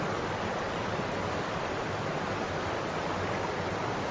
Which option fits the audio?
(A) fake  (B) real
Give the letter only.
B